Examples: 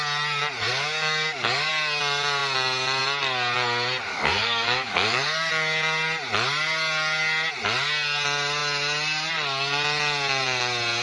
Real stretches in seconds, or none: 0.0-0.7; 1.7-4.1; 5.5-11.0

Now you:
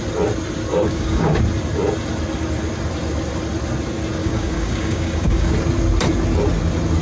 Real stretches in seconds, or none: 0.0-0.7; 1.4-4.2; 5.5-7.0

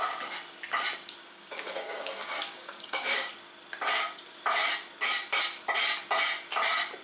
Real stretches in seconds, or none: 0.0-1.2; 3.3-7.0

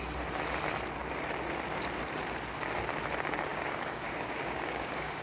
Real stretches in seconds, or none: 0.0-3.5